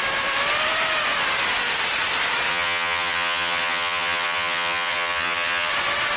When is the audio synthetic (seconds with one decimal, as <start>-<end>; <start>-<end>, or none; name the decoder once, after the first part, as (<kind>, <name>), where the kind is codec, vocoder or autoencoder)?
2.5-5.7 (vocoder, HiFi-GAN)